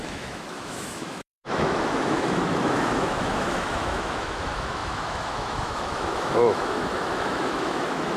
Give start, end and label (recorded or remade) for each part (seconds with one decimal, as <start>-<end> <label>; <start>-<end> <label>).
0.0-8.2 remade